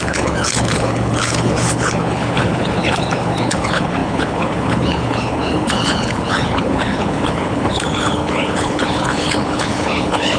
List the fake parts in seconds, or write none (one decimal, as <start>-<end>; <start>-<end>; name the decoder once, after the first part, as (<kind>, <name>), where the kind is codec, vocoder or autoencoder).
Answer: 0.0-10.4 (codec, HILCodec)